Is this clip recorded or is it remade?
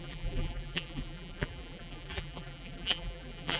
remade